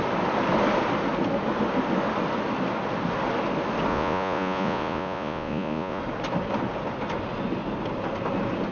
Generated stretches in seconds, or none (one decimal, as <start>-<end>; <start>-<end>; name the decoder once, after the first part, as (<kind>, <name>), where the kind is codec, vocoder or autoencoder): 3.9-6.0 (vocoder, Vocos)